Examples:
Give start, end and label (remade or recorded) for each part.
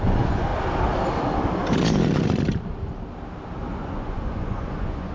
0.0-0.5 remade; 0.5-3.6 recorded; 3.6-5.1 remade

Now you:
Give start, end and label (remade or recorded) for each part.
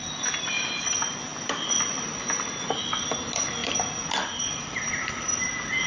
0.0-5.9 recorded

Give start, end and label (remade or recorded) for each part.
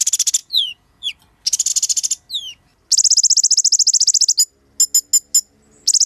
0.0-0.4 recorded; 0.4-1.1 remade; 1.1-6.1 recorded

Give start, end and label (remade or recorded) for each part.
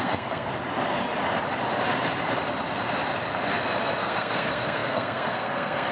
0.0-0.5 remade; 0.5-4.0 recorded; 4.0-5.9 remade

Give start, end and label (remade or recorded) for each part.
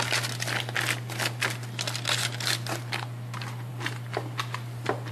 0.0-5.1 recorded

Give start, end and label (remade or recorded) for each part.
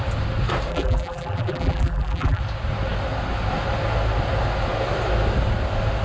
0.0-0.7 recorded; 0.7-2.4 remade; 2.4-6.0 recorded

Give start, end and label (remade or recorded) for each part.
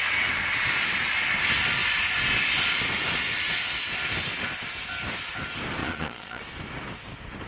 0.0-5.8 recorded; 5.8-6.4 remade; 6.4-7.5 recorded